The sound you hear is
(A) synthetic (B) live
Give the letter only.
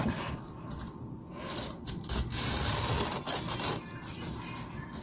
B